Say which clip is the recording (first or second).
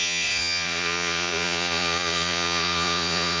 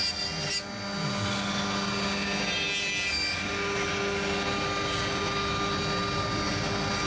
second